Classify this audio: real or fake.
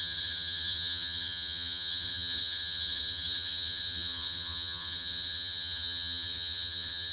fake